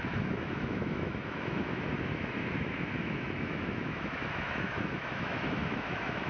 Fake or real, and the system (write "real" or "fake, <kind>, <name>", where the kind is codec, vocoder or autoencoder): fake, autoencoder, DAC-VAE